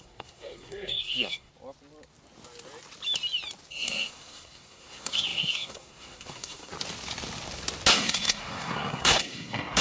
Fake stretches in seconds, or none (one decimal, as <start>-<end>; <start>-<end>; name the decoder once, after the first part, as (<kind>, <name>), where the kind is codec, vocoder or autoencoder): 0.0-1.5 (codec, SNAC); 3.7-6.7; 7.9-9.8